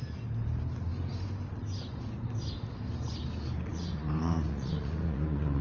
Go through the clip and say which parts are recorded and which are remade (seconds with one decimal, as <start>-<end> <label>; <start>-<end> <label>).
0.0-1.7 recorded; 1.7-2.3 remade; 2.3-3.7 recorded; 3.7-5.6 remade